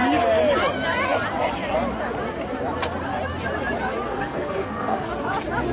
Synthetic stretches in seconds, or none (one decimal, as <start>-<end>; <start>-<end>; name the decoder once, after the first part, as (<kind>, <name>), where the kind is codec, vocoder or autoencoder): 4.1-5.1 (codec, SNAC)